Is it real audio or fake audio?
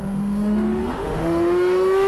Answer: fake